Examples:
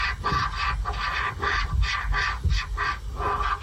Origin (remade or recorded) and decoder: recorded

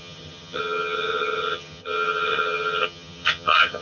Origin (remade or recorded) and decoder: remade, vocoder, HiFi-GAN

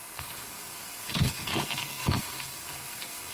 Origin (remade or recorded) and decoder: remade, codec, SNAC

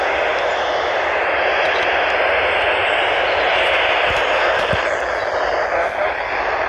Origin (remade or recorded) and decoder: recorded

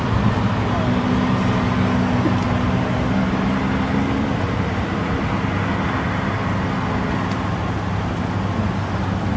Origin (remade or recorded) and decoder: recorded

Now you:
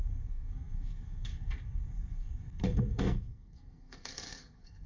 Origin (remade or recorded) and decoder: remade, codec, SNAC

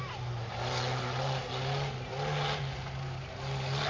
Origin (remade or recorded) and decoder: recorded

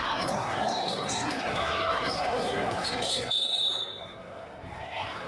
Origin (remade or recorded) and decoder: remade, codec, SNAC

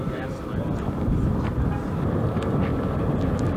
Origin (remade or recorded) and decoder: recorded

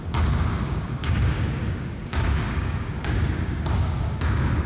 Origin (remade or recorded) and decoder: remade, codec, DAC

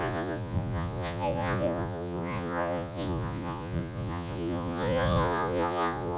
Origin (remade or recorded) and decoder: remade, vocoder, Vocos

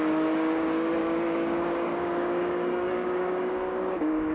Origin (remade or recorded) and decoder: remade, codec, DAC